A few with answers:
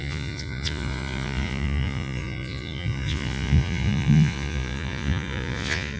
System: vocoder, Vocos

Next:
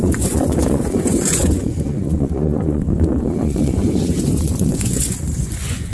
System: vocoder, Vocos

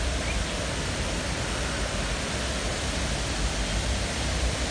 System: none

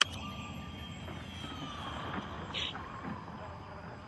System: none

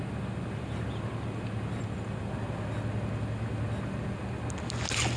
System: none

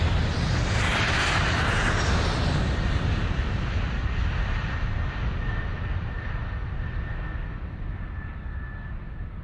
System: none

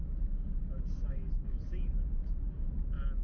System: none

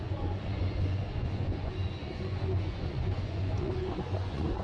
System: vocoder, Vocos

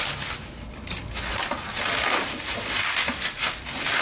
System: none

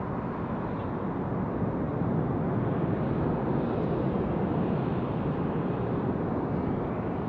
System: none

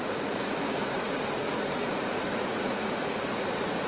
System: vocoder, Vocos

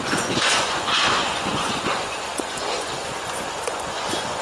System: vocoder, Vocos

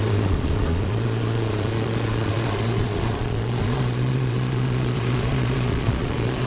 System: vocoder, Vocos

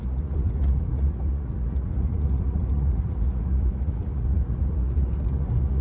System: vocoder, Vocos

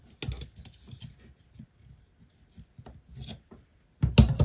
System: none